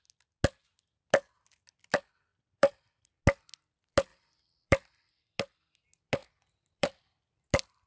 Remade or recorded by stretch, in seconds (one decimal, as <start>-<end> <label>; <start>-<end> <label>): 0.0-2.3 recorded; 2.3-3.1 remade; 3.1-4.1 recorded; 4.1-5.3 remade; 5.3-6.2 recorded; 6.2-7.4 remade; 7.4-7.9 recorded